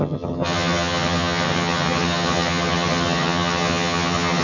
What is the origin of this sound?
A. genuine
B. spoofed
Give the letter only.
B